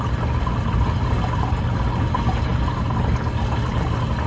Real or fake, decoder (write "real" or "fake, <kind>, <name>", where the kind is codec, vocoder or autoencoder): real